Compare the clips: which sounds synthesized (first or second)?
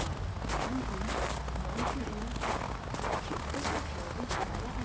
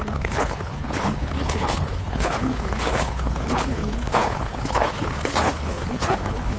second